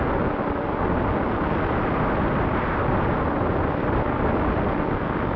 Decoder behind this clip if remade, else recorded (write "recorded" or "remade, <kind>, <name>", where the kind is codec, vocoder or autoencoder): recorded